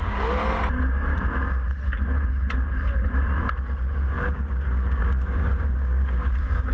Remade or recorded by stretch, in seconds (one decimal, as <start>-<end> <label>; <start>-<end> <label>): 0.0-0.4 remade; 0.4-4.1 recorded; 4.1-6.7 remade